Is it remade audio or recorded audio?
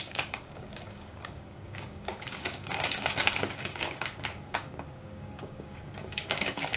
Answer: remade